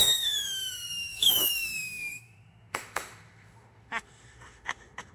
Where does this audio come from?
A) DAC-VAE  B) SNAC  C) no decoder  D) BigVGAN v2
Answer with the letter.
A